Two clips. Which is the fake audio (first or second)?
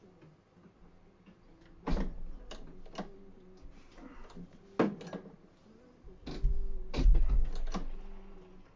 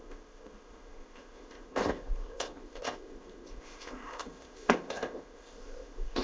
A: second